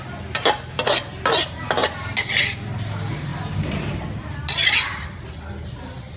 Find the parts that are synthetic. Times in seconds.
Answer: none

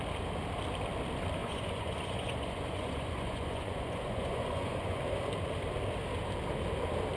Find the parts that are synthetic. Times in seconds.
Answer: 1.4-5.0 (vocoder, Vocos)

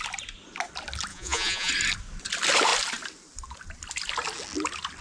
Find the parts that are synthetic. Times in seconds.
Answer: 1.1-1.7 (vocoder, Vocos)

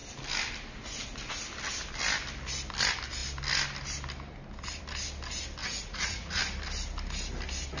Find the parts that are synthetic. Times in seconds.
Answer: 5.6-6.4 (vocoder, Vocos)

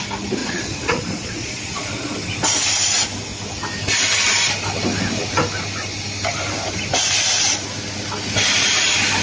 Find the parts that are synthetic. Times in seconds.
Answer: 0.4-2.1 (vocoder, Vocos)

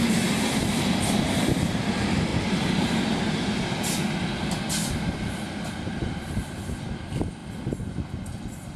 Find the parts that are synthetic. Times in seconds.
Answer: none